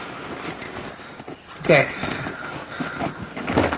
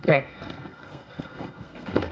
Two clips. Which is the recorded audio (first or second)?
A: first